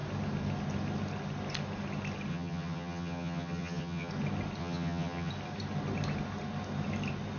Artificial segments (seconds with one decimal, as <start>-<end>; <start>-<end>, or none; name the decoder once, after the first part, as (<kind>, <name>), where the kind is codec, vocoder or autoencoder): 2.3-4.1 (vocoder, HiFi-GAN); 4.6-5.3